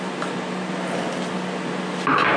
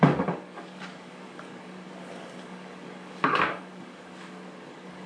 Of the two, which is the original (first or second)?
first